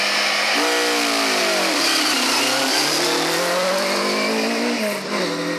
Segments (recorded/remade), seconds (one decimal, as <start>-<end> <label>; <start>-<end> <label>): 0.0-1.4 recorded; 1.4-4.8 remade; 4.8-5.6 recorded